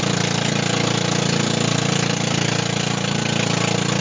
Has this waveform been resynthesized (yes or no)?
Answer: no